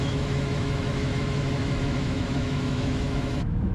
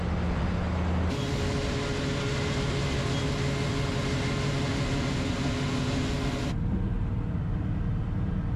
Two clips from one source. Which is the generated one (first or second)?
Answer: first